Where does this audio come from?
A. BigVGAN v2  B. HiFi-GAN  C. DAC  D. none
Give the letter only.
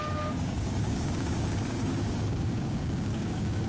C